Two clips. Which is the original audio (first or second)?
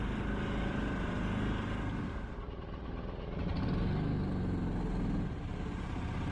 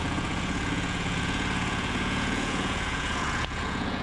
first